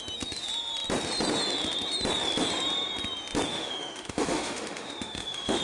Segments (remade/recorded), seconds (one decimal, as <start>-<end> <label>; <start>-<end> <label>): 0.0-3.5 recorded; 3.5-5.6 remade